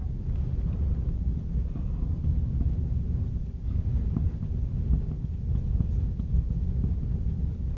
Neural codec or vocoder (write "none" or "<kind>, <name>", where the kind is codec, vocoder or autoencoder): none